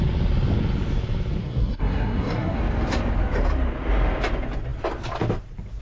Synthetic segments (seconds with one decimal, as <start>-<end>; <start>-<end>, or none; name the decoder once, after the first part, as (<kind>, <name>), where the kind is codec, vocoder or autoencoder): 1.4-2.6 (codec, SNAC)